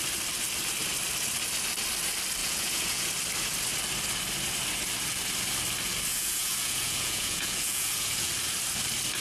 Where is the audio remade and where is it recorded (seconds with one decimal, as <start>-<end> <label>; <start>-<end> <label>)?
0.0-2.4 recorded; 2.4-3.1 remade; 3.1-6.1 recorded; 6.1-8.3 remade; 8.3-9.2 recorded